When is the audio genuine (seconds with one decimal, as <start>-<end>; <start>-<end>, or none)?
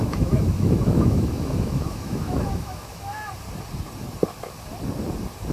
3.3-5.5